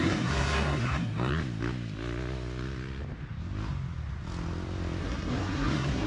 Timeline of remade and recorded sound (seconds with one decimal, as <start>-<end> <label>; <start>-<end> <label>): 0.0-1.3 remade; 1.3-5.0 recorded; 5.0-6.1 remade